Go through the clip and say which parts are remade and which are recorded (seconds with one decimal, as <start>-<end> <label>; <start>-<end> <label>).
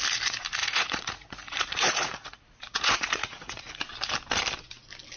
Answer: 0.0-0.6 recorded; 0.6-3.7 remade; 3.7-5.2 recorded